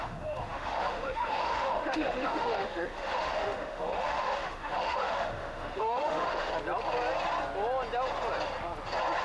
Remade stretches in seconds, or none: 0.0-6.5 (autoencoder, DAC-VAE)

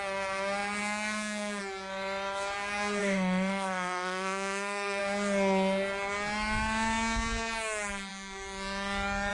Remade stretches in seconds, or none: 3.0-5.0 (autoencoder, DAC-VAE)